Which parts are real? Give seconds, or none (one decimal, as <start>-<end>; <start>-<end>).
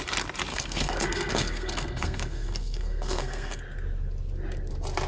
0.0-0.5; 3.6-5.1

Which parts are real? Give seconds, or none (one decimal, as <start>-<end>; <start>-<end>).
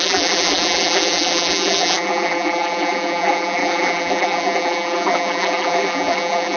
none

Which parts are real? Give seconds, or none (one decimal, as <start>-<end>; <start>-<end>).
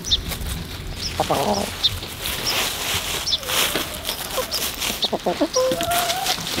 0.0-6.6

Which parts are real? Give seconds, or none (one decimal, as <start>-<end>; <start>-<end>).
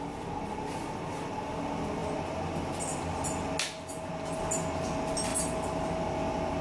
0.0-6.6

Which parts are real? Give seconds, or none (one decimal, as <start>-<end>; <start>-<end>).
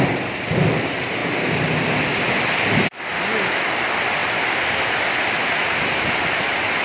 none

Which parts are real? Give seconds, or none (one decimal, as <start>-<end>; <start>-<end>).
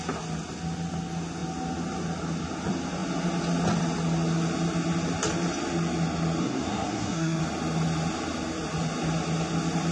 0.0-6.4; 7.4-9.9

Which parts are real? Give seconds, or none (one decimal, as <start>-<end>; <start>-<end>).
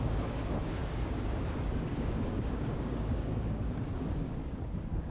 none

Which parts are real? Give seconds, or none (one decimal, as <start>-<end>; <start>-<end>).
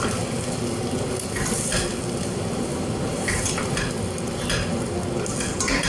0.0-5.9